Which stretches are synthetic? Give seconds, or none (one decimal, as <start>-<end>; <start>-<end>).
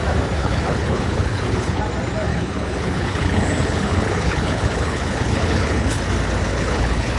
0.4-1.8; 2.3-6.0; 6.5-7.2